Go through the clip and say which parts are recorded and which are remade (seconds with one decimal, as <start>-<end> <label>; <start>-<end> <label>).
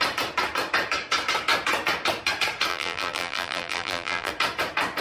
0.0-2.7 recorded; 2.7-4.3 remade; 4.3-5.0 recorded